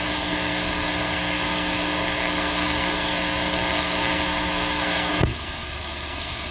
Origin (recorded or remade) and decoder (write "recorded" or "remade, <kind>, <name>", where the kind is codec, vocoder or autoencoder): remade, codec, SNAC